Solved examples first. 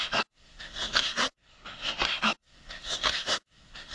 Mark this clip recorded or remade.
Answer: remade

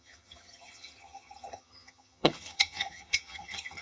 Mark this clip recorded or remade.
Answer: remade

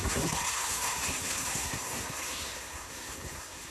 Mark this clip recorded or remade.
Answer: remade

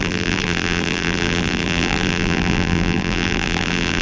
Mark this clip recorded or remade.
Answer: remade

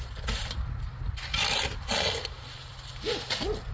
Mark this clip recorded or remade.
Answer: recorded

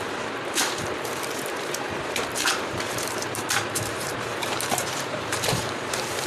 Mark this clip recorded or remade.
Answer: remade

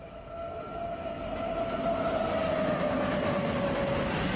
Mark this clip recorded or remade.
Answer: recorded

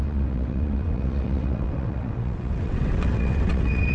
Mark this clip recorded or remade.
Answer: remade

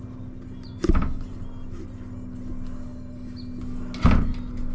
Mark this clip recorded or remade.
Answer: recorded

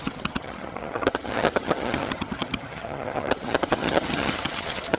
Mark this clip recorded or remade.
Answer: remade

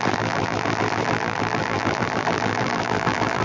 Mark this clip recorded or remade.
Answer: remade